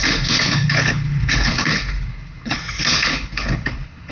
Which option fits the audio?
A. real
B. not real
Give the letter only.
B